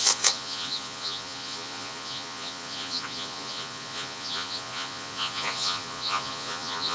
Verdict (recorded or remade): remade